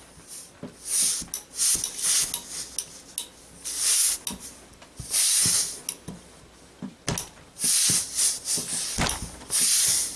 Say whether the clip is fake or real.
real